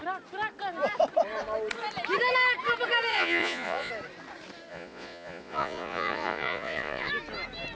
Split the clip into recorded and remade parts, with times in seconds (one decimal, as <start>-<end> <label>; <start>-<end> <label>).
0.0-3.1 recorded; 3.1-3.9 remade; 3.9-4.7 recorded; 4.7-7.1 remade; 7.1-7.7 recorded